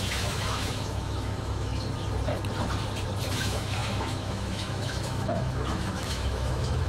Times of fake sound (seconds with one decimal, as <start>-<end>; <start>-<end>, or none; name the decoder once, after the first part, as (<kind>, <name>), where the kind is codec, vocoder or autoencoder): 0.0-1.7 (autoencoder, DAC-VAE); 3.3-6.9